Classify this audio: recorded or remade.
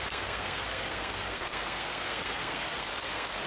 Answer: remade